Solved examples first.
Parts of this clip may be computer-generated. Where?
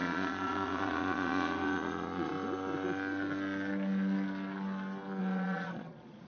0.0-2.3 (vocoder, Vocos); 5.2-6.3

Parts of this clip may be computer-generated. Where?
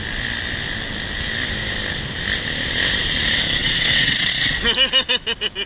3.6-4.3 (vocoder, WaveNeXt)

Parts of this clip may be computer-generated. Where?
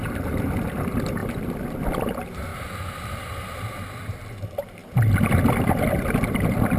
2.5-3.7 (vocoder, BigVGAN v2)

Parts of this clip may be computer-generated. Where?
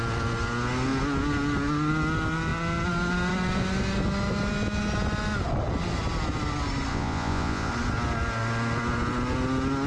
6.9-7.7 (vocoder, Vocos)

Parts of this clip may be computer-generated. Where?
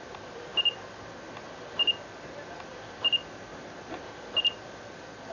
none